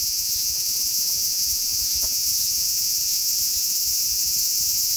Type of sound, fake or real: fake